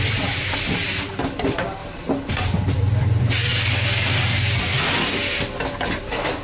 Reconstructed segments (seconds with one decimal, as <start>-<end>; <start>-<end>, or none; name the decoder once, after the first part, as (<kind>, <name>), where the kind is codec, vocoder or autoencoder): 0.0-3.5 (vocoder, BigVGAN v2); 6.0-6.4